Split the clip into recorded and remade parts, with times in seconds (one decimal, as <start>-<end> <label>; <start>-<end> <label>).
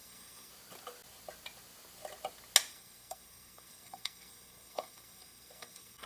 0.0-0.5 remade; 0.5-2.7 recorded; 2.7-6.1 remade